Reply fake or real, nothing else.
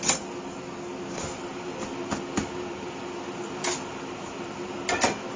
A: real